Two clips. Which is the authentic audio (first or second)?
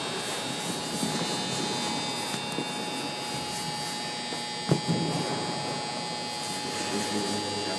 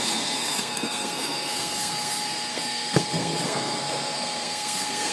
first